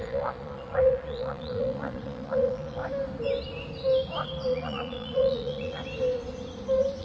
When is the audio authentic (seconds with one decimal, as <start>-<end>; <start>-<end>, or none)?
2.8-4.5; 5.8-7.0